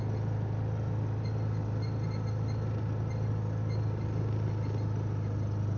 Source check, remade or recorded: recorded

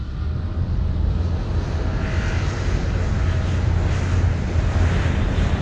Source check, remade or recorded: recorded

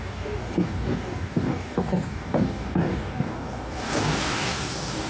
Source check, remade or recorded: remade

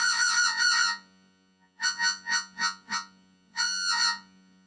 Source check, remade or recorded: remade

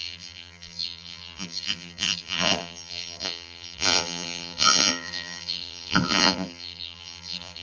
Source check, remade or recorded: remade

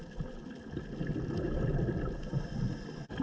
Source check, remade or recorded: recorded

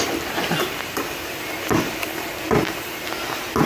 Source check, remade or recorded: recorded